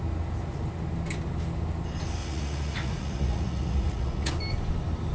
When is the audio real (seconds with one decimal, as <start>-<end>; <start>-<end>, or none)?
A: 0.0-2.2; 4.3-5.1

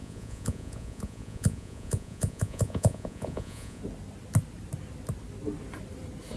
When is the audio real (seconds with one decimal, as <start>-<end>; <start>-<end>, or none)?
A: 3.8-6.4

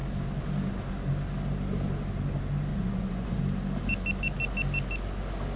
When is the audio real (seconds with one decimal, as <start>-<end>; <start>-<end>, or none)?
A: 0.0-2.7; 3.4-5.6

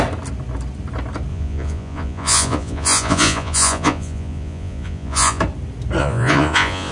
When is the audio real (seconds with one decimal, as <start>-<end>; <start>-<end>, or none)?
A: 0.0-1.3; 5.4-6.0